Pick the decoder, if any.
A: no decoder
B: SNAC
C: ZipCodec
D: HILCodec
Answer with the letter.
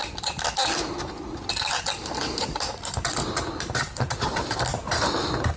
A